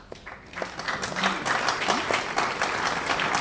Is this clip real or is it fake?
real